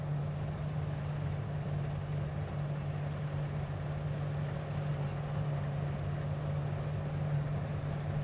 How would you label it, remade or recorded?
recorded